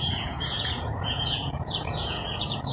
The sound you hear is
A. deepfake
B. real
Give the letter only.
A